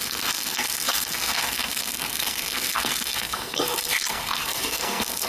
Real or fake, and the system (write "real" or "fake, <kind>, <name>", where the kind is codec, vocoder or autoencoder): fake, codec, SNAC